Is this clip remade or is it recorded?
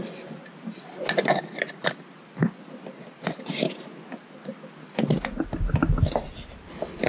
recorded